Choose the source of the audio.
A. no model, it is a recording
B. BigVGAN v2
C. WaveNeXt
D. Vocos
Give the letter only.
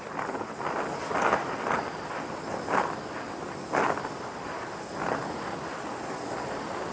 A